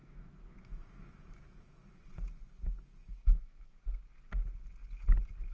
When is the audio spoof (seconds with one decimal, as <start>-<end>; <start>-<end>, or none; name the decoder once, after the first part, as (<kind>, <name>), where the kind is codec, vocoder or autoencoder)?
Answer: 0.0-2.1 (autoencoder, DAC-VAE); 3.0-3.8